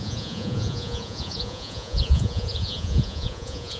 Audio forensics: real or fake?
fake